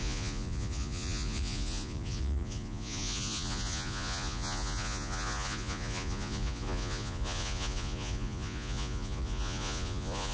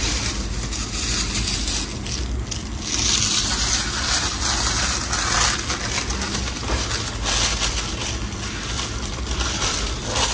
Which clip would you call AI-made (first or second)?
first